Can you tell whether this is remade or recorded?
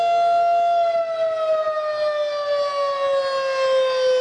recorded